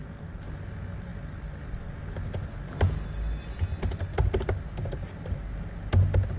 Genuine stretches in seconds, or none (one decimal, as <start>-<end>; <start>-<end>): 0.0-6.4